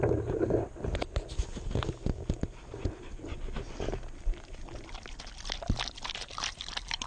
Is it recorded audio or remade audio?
recorded